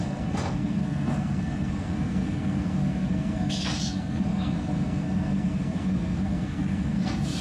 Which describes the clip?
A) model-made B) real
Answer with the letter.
A